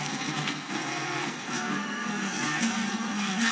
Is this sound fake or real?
fake